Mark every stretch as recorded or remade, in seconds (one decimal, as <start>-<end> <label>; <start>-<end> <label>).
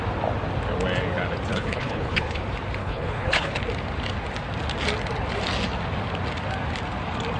0.0-1.5 recorded; 1.5-2.4 remade; 2.4-2.8 recorded; 2.8-3.6 remade; 3.6-7.4 recorded